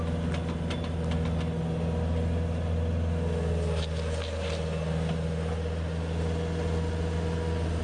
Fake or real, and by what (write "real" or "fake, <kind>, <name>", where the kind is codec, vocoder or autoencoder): real